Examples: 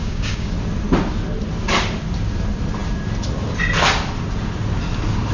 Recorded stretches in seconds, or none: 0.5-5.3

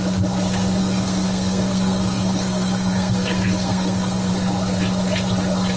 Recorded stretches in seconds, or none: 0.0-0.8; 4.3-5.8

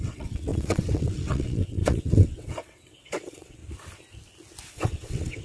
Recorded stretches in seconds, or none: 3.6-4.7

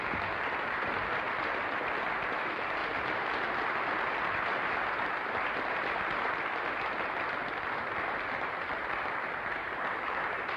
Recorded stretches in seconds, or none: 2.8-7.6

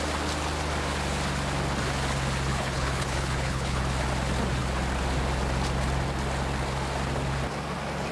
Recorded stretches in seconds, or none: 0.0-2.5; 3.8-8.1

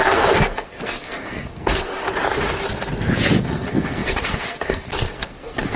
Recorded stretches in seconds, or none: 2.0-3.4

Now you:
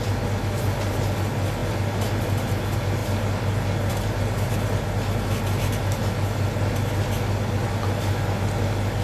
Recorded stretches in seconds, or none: 0.0-9.0

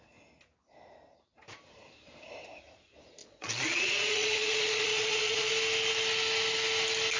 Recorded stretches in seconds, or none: 0.0-3.2; 5.5-7.2